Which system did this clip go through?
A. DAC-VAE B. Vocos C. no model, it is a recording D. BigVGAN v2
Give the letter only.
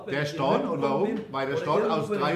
C